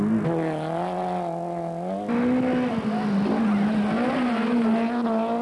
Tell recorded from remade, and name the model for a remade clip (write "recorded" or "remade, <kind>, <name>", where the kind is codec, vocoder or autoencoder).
recorded